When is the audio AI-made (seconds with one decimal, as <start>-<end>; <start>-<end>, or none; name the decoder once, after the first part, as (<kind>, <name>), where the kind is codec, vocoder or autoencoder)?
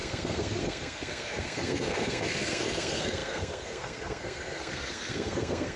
0.0-5.8 (codec, SNAC)